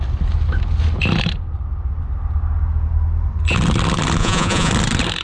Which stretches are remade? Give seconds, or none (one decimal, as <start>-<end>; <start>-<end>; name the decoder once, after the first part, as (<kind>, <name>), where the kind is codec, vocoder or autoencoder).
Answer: 4.2-4.7 (vocoder, Vocos)

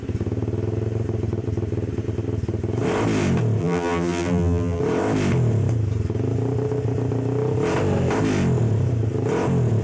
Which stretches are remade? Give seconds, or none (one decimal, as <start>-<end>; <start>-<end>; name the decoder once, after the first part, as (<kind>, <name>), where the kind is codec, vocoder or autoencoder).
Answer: 3.6-4.8 (vocoder, BigVGAN v2)

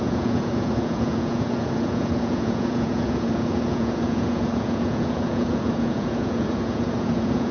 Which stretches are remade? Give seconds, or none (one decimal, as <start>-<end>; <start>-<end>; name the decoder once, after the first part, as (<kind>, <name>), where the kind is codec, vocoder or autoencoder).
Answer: 0.0-7.5 (vocoder, Vocos)

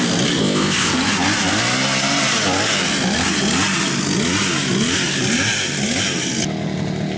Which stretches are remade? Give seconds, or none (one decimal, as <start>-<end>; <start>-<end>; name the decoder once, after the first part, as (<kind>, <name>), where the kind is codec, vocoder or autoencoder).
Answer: 0.4-0.9 (codec, ZipCodec)

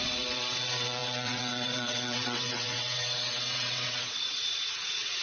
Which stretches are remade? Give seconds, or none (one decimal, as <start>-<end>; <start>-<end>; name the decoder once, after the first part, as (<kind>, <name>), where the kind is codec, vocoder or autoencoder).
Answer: 0.0-5.2 (vocoder, WaveNeXt)

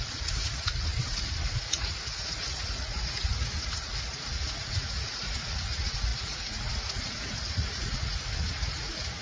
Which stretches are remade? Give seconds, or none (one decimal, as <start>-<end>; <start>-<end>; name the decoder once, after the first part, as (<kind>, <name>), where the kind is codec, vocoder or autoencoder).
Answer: 0.0-0.9 (vocoder, Vocos); 1.5-9.2

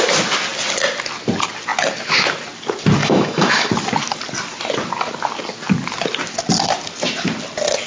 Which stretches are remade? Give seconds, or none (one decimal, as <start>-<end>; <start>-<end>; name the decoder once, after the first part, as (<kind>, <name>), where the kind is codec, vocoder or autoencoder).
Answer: 3.0-3.7 (autoencoder, DAC-VAE)

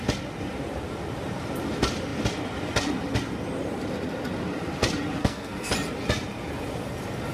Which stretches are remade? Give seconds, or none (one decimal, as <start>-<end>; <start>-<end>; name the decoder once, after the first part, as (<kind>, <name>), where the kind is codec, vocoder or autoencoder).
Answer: 5.2-5.7 (codec, SNAC)